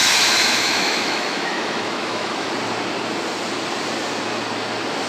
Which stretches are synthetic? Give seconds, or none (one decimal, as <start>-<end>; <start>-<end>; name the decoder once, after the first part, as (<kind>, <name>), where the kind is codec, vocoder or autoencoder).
0.0-2.5 (autoencoder, DAC-VAE)